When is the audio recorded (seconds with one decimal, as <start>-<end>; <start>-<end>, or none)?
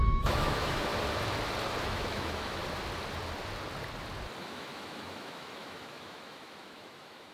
0.9-1.8; 2.6-4.4